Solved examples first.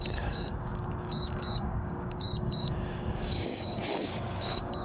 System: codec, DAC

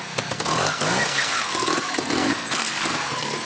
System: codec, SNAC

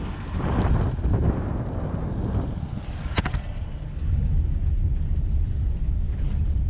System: none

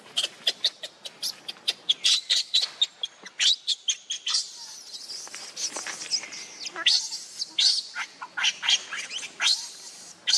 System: none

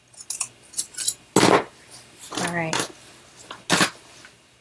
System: none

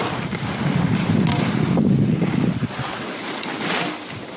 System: none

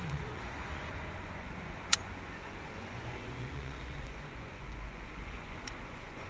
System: vocoder, Vocos